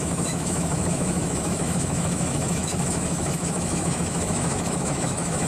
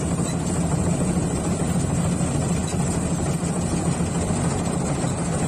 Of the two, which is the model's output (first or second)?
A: first